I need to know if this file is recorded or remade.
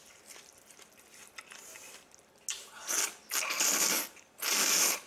recorded